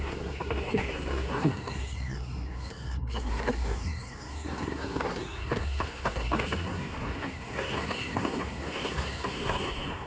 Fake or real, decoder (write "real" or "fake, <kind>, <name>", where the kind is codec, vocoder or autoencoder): fake, codec, SNAC